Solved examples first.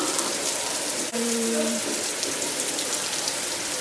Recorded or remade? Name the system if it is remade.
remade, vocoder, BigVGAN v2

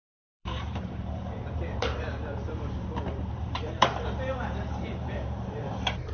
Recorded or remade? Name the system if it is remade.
remade, vocoder, BigVGAN v2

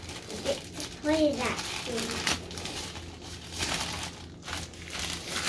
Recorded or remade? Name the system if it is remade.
recorded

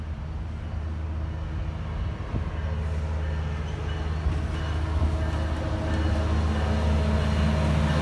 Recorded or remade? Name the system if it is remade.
recorded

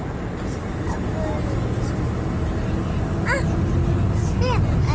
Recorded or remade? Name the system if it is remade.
recorded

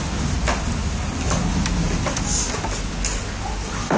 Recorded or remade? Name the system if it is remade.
recorded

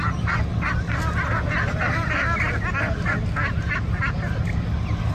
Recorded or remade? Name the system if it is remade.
recorded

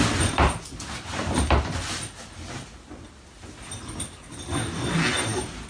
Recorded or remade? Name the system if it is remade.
recorded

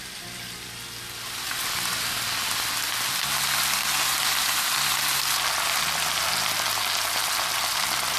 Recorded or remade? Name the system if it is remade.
recorded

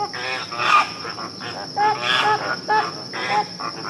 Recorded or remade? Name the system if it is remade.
recorded